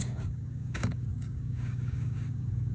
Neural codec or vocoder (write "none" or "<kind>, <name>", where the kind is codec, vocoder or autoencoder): codec, DAC